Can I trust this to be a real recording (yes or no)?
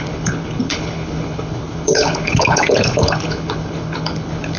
no